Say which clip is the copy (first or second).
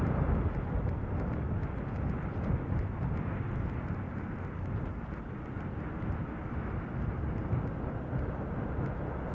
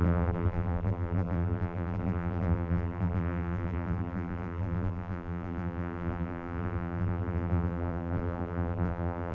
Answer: second